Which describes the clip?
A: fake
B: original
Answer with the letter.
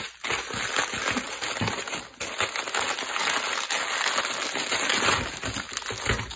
B